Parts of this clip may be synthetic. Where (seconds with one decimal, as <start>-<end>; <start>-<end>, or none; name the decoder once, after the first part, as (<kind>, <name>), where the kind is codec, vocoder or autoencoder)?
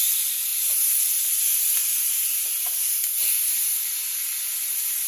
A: none